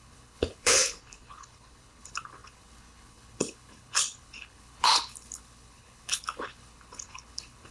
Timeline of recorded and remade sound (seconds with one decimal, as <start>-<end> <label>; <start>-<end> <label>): 0.0-7.7 remade